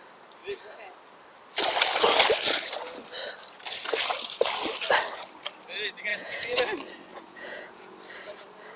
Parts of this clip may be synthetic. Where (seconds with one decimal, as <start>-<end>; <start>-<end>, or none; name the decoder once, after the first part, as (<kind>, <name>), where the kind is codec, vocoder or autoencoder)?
6.1-6.6 (vocoder, Vocos); 7.1-7.9